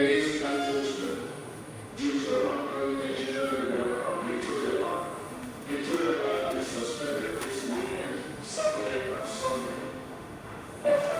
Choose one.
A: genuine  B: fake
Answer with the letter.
B